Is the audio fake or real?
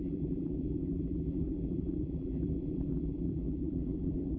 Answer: fake